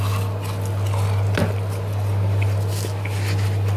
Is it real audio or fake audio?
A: real